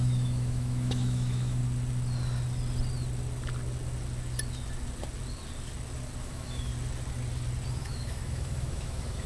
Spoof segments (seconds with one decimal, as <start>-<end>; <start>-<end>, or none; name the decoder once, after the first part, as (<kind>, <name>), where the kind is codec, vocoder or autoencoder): 0.0-1.6 (autoencoder, DAC-VAE); 6.2-6.7; 7.7-9.3